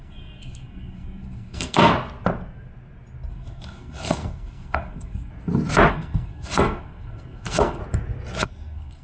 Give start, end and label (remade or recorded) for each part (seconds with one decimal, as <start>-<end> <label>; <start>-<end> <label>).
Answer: 0.0-1.9 remade; 1.9-3.3 recorded; 3.3-5.3 remade; 5.3-5.9 recorded; 5.9-7.8 remade; 7.8-8.4 recorded; 8.4-9.0 remade